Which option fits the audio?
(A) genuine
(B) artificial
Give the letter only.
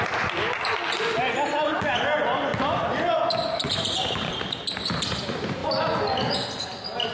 A